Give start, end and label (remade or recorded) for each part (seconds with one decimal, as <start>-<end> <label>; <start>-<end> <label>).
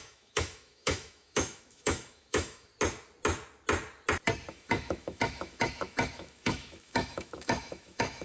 0.0-2.7 remade; 2.7-4.5 recorded; 4.5-8.2 remade